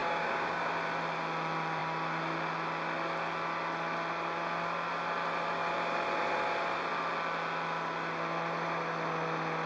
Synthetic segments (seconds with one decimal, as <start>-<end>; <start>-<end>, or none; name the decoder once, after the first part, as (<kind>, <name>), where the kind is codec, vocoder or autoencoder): 0.0-0.7 (codec, DAC)